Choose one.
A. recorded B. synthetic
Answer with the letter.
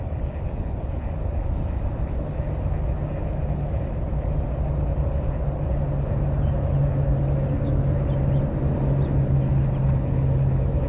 A